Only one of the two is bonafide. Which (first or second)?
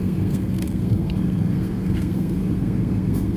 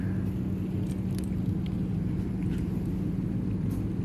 second